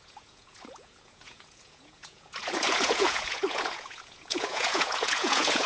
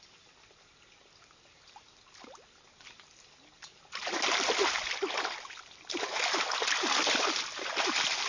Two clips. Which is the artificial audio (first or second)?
first